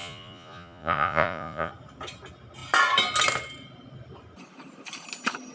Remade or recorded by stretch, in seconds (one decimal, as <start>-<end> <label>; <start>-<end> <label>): 0.0-1.7 remade; 1.7-5.5 recorded